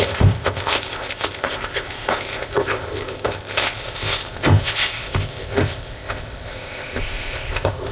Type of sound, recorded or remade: remade